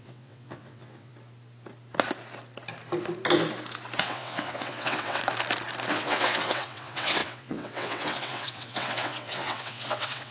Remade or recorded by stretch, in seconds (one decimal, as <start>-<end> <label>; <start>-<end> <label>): 0.0-1.1 remade; 1.1-4.0 recorded; 4.0-5.2 remade; 5.2-5.9 recorded; 5.9-10.3 remade